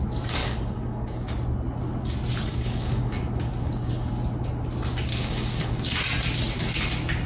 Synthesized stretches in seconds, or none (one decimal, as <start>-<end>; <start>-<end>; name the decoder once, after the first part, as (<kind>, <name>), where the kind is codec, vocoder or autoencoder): 0.4-1.3 (codec, DAC); 2.5-4.1; 5.1-5.8

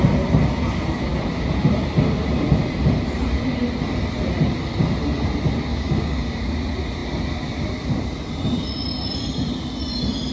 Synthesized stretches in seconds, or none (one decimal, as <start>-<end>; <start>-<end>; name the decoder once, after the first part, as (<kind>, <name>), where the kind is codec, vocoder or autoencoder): 5.7-6.4 (codec, DAC)

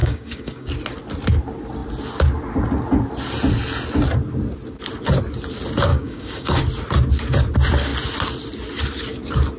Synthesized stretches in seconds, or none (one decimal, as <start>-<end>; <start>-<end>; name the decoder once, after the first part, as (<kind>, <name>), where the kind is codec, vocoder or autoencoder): 0.0-0.7 (codec, DAC); 5.9-6.6

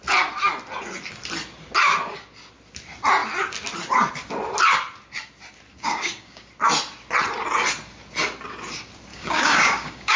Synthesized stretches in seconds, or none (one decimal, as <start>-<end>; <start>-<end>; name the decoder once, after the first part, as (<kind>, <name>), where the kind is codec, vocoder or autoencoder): 5.7-6.5 (codec, DAC); 9.1-10.2

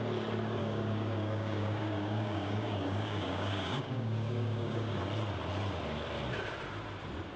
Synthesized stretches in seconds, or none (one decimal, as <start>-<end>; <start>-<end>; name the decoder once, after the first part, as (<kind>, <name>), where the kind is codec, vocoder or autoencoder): 0.6-5.0 (codec, DAC)

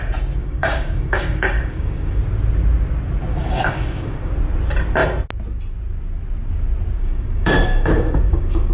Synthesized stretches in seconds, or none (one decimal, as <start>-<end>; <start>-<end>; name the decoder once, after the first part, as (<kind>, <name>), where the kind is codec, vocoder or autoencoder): 0.4-2.2 (codec, DAC); 3.3-4.3; 7.0-8.7